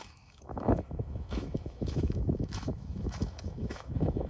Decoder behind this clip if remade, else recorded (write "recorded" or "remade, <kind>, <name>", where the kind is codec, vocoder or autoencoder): remade, autoencoder, DAC-VAE